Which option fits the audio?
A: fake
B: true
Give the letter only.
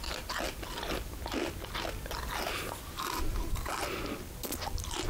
B